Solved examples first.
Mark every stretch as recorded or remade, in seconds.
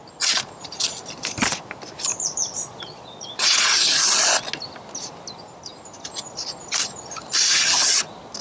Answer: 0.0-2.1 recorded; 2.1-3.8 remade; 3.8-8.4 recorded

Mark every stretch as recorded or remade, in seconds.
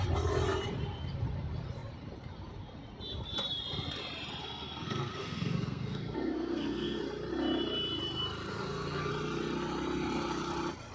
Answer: 0.0-4.4 recorded; 4.4-7.0 remade; 7.0-8.5 recorded; 8.5-9.1 remade; 9.1-10.9 recorded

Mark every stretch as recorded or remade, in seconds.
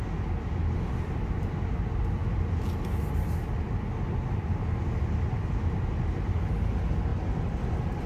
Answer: 0.0-8.1 recorded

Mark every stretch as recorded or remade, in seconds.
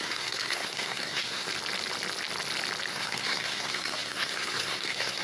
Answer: 0.0-1.5 remade; 1.5-2.9 recorded; 2.9-5.2 remade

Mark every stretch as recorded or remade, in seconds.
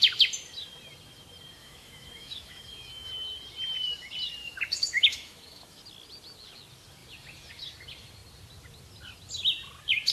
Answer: 0.0-1.6 recorded; 1.6-3.1 remade; 3.1-4.4 recorded; 4.4-5.8 remade; 5.8-10.1 recorded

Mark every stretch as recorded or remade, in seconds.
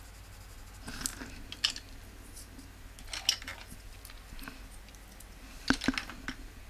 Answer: 0.0-6.7 recorded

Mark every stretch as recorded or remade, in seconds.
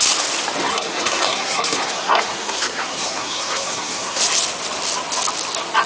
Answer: 0.0-0.7 recorded; 0.7-4.2 remade; 4.2-5.9 recorded